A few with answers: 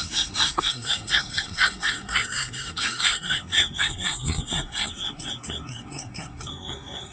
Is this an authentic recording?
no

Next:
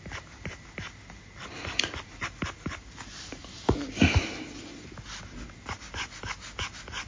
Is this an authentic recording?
yes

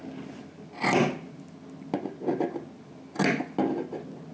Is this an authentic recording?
yes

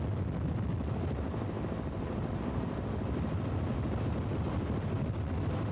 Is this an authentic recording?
yes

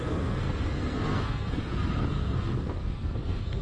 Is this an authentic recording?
no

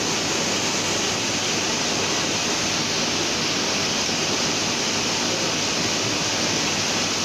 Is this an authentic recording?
yes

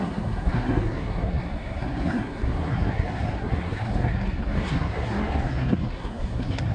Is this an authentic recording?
no